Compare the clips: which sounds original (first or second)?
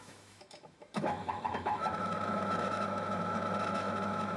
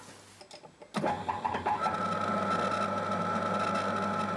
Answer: second